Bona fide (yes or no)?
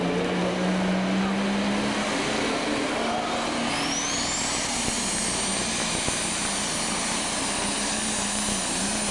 yes